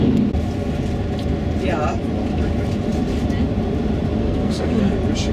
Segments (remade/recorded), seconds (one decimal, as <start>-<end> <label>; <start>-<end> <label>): 0.0-4.2 recorded; 4.2-4.8 remade; 4.8-5.3 recorded

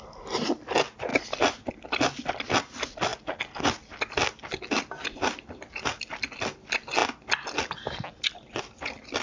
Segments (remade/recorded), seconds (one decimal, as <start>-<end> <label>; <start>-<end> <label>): 0.0-9.2 recorded

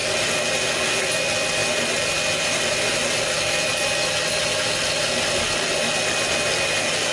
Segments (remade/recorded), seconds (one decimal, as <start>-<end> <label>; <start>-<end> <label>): 0.0-7.1 recorded

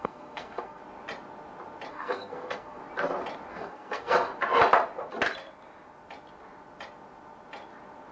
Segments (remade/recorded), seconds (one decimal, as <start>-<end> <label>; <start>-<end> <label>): 0.0-0.8 remade; 0.8-1.9 recorded; 1.9-2.8 remade; 2.8-3.5 recorded; 3.5-4.3 remade; 4.3-8.1 recorded